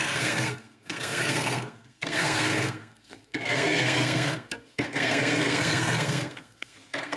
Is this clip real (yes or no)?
no